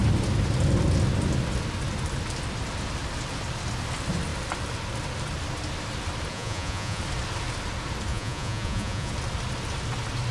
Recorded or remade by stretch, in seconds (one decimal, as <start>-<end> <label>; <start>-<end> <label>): 0.0-6.3 recorded; 6.3-7.0 remade; 7.0-8.1 recorded; 8.1-9.1 remade; 9.1-10.3 recorded